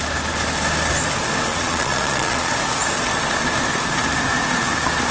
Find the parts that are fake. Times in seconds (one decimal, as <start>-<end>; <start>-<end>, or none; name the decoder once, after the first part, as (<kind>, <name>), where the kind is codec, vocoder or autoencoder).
1.5-2.5 (vocoder, Vocos)